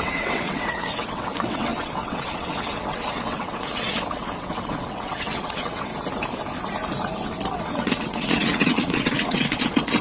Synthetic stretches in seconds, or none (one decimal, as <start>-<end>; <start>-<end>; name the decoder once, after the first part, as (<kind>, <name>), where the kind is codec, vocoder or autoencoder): 0.0-5.9 (vocoder, WaveNeXt); 7.5-10.0